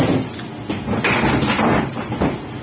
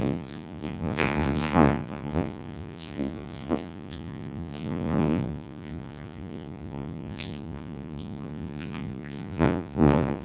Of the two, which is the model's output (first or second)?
second